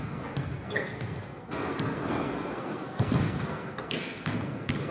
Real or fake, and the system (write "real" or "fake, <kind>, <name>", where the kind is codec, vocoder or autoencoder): fake, codec, SNAC